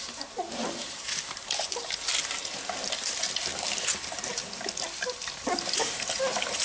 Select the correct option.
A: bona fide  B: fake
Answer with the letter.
A